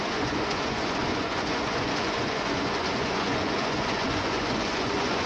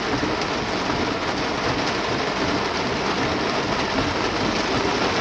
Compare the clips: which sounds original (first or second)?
second